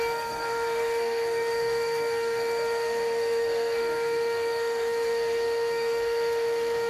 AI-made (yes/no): yes